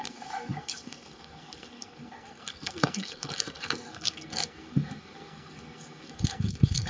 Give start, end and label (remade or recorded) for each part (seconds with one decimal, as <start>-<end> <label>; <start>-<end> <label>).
0.0-6.9 remade